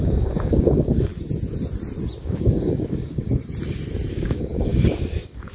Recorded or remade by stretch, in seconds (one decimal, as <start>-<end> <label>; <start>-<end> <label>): 0.0-1.1 remade; 1.1-2.2 recorded; 2.2-3.4 remade; 3.4-4.1 recorded; 4.1-5.5 remade